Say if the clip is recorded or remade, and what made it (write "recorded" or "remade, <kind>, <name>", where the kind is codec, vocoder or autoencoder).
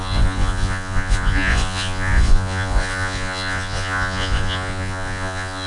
remade, vocoder, Vocos